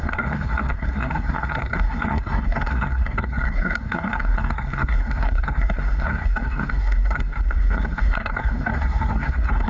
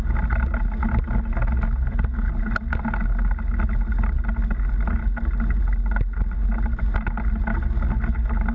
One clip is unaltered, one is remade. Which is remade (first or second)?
first